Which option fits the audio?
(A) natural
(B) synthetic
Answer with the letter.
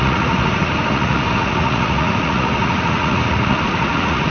B